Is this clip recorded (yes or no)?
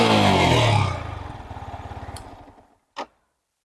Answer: yes